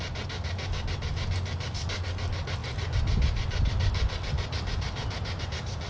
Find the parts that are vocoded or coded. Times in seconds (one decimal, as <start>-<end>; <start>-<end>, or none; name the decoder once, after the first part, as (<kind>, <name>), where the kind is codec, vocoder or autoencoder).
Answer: 2.6-5.4 (vocoder, BigVGAN v2)